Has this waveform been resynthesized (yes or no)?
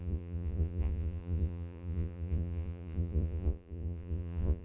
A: yes